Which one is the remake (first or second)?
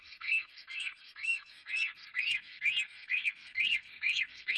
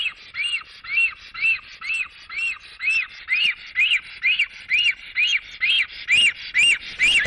first